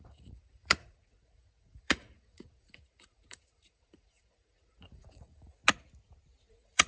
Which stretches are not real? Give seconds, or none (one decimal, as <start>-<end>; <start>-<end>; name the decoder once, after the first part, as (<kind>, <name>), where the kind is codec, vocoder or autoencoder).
0.0-5.6 (vocoder, Vocos); 6.5-6.9